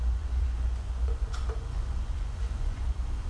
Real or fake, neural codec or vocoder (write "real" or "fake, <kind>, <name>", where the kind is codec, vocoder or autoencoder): fake, vocoder, Vocos